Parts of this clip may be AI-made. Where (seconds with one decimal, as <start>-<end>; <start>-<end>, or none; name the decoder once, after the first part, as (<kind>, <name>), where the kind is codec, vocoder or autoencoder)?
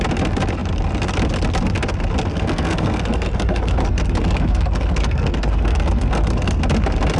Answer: 2.3-6.6 (codec, SNAC)